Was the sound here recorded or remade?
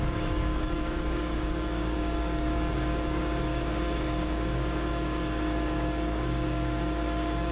remade